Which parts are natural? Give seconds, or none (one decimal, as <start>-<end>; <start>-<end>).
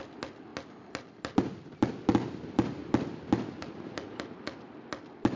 0.0-5.4